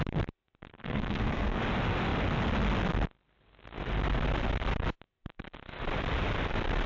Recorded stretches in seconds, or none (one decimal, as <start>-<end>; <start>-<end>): 0.0-0.7; 1.6-6.9